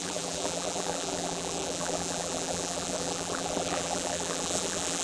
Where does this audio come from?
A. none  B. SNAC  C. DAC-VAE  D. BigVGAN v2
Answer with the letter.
D